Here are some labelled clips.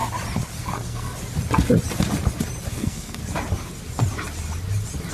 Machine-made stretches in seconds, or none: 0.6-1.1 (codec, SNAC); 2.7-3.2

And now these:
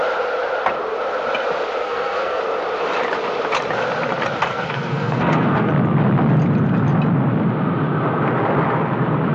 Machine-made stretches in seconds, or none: 1.8-2.4 (codec, SNAC); 4.5-5.7